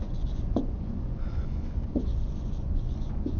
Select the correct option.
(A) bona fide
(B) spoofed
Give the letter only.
B